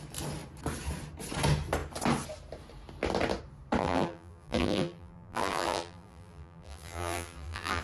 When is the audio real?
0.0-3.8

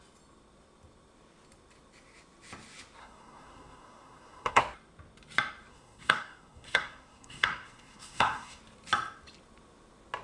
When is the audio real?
0.0-3.0; 4.6-5.7; 8.6-10.2

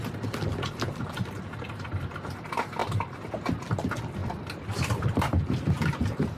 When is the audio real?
0.0-2.8; 3.3-6.4

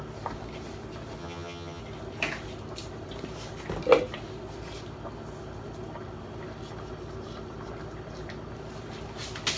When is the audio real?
0.0-1.2; 1.8-9.6